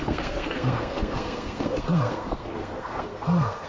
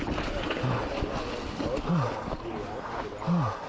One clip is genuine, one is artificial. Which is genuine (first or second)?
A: second